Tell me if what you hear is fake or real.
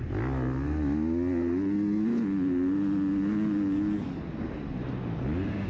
real